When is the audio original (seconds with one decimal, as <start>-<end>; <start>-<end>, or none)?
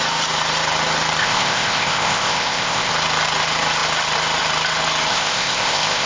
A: 0.0-1.2; 2.9-5.1